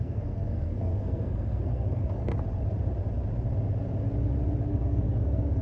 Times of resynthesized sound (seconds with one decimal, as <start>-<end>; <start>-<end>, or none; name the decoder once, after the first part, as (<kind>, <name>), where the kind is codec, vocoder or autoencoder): 0.0-2.3 (codec, SNAC); 4.7-5.6